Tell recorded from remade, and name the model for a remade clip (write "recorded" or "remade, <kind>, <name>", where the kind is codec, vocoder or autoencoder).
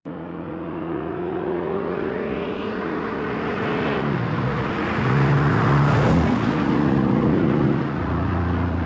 remade, vocoder, Vocos